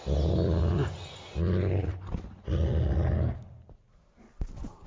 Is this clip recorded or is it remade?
recorded